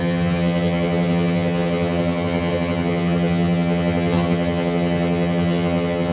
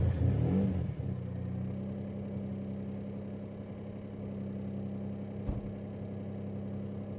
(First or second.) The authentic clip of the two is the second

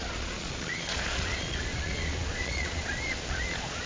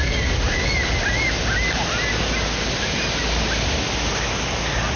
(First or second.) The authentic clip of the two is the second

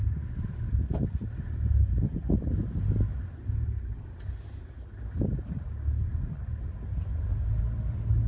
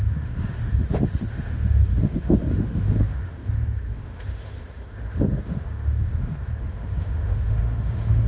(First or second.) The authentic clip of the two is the first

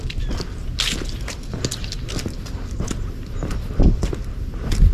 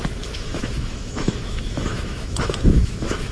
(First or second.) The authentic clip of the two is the first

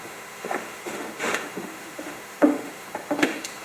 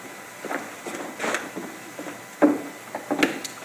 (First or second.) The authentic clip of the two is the second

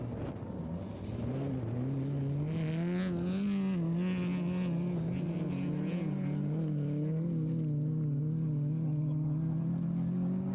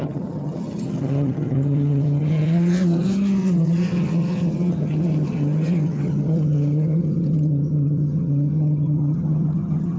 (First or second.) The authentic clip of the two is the first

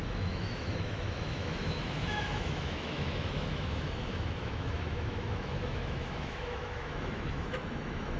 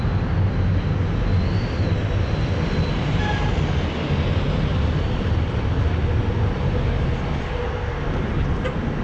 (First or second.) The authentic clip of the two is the second